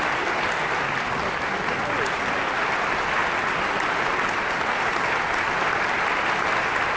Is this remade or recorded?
recorded